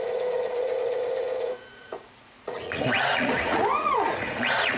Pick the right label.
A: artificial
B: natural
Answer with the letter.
A